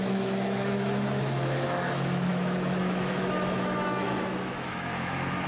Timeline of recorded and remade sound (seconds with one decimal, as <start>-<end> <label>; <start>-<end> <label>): 0.0-5.5 remade